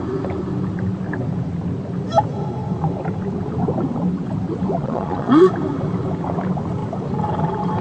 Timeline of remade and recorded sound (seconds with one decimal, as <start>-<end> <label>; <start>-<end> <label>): 0.0-4.8 recorded; 4.8-5.5 remade; 5.5-7.8 recorded